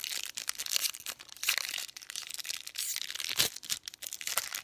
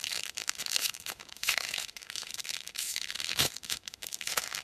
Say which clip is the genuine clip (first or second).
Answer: first